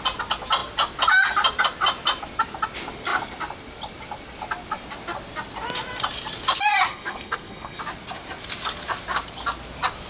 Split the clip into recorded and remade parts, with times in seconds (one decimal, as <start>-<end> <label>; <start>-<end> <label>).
0.0-6.9 recorded; 6.9-7.8 remade; 7.8-10.1 recorded